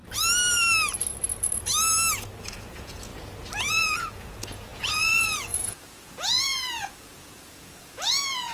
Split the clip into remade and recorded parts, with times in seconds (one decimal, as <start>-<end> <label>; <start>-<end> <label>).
0.0-2.4 recorded; 2.4-3.1 remade; 3.1-3.7 recorded; 3.7-8.5 remade